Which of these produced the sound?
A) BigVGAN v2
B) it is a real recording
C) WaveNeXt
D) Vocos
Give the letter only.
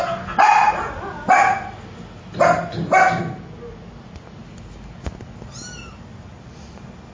B